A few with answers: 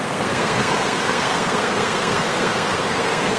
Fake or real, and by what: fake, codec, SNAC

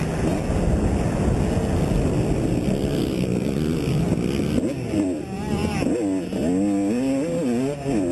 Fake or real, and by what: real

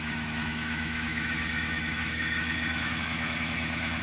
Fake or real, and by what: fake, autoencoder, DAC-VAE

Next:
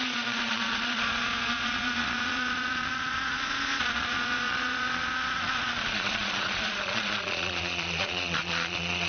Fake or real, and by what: fake, vocoder, Vocos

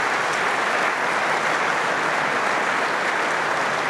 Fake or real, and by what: real